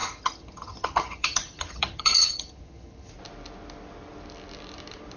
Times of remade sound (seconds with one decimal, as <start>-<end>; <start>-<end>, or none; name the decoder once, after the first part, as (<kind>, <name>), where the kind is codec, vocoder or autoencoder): 0.0-3.1 (vocoder, HiFi-GAN)